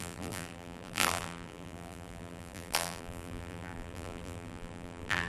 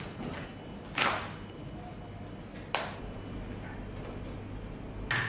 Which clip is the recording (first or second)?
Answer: second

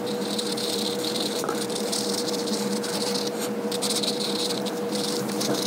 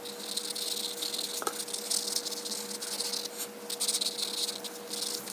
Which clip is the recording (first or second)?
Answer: second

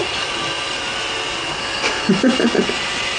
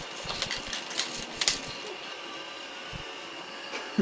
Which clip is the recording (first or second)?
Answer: first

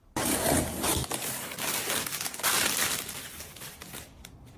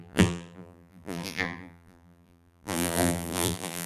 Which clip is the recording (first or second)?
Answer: first